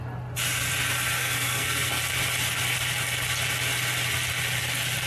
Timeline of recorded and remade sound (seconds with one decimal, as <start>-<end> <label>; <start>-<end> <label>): 0.0-1.2 recorded; 1.2-2.0 remade; 2.0-5.1 recorded